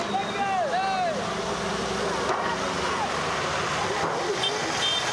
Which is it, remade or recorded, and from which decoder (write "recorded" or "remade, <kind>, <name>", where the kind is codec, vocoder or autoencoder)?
recorded